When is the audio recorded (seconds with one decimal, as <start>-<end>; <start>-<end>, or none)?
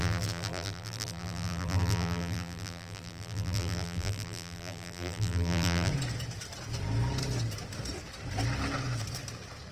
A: 5.9-9.7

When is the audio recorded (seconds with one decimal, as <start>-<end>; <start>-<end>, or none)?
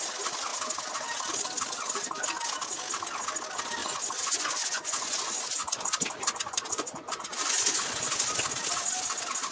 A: 0.0-3.8; 8.5-9.5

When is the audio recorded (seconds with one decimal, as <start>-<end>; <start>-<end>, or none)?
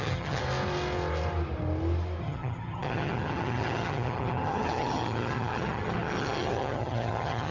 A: 0.4-2.2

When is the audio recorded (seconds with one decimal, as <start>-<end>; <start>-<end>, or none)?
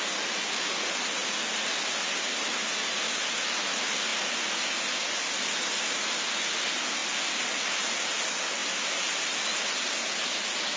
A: 0.0-10.8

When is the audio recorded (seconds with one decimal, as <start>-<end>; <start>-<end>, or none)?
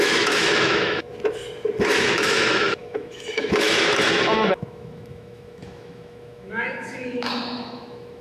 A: 1.1-1.8